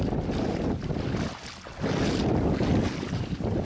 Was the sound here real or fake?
real